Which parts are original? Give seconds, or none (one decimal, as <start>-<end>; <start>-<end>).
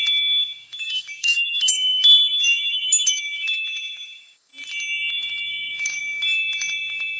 4.5-5.1